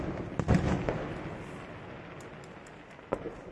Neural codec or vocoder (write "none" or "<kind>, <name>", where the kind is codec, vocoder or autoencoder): none